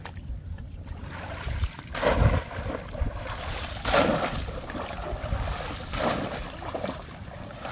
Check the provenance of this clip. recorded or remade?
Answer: recorded